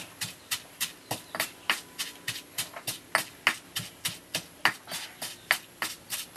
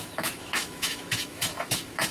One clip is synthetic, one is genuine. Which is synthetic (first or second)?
second